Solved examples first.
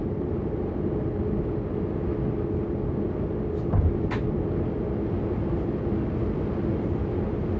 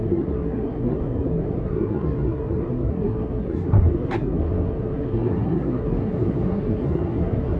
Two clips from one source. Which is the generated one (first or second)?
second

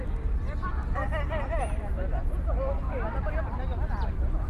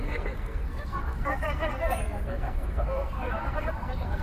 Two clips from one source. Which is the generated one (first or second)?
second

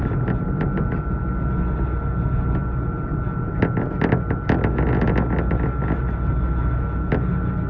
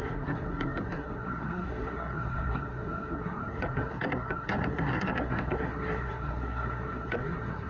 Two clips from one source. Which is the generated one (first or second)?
second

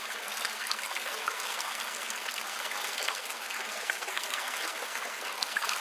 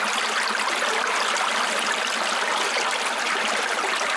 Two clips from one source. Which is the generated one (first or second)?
first